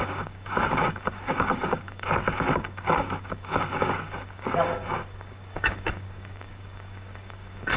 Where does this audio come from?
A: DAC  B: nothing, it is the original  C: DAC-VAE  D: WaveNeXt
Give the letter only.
A